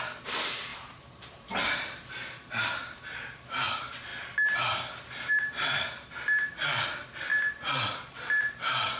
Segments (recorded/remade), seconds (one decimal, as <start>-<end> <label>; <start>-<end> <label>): 0.0-0.7 recorded; 0.7-2.5 remade; 2.5-9.0 recorded